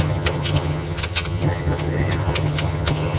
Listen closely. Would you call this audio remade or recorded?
remade